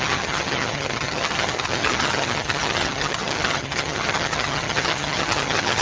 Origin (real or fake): fake